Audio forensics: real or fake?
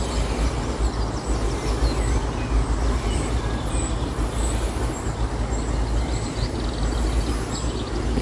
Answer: real